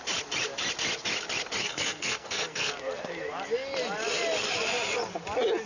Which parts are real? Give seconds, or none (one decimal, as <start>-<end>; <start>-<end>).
0.0-1.6; 2.7-5.7